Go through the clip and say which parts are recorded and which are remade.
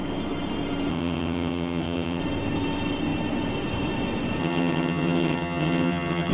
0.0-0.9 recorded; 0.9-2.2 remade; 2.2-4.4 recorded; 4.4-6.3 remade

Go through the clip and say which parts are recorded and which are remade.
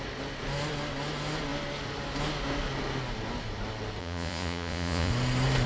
0.0-4.0 recorded; 4.0-5.1 remade; 5.1-5.7 recorded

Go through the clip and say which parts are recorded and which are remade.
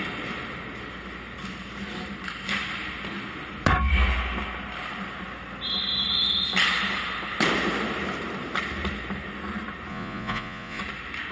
0.0-9.9 recorded; 9.9-10.8 remade; 10.8-11.3 recorded